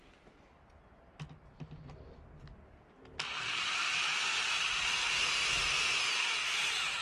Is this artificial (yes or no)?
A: no